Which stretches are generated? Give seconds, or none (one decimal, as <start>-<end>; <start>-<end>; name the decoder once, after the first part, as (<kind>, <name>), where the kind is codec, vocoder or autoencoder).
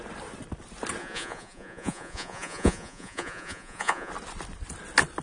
1.0-4.1 (vocoder, Vocos)